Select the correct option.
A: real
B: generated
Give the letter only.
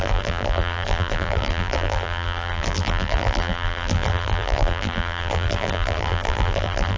B